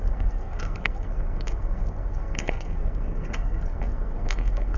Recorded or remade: remade